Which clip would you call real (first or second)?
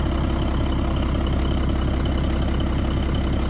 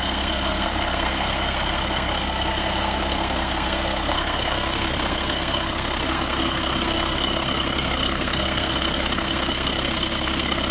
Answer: first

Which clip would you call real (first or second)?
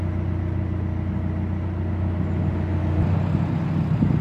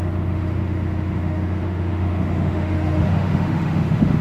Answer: first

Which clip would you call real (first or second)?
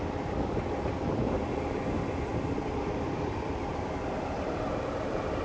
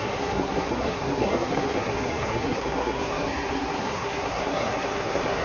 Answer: first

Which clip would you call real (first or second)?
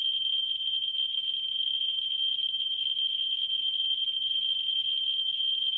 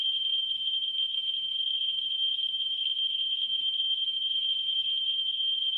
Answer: first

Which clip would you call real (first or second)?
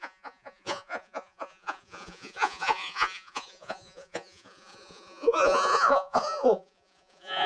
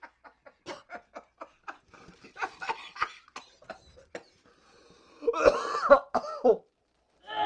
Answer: second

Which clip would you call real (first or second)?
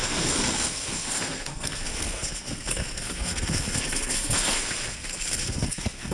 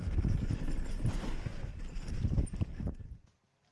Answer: second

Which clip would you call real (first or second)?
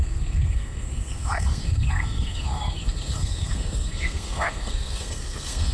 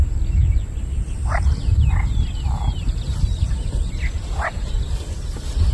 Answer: second